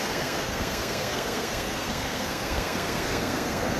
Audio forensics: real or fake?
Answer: fake